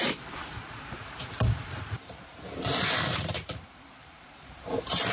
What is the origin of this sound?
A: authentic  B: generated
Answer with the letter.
B